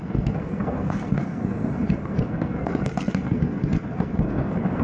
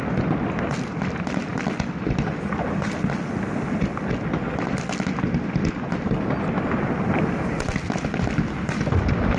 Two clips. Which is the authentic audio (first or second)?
second